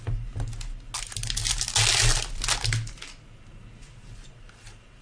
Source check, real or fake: real